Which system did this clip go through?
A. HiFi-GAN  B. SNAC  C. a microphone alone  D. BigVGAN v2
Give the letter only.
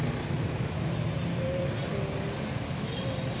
C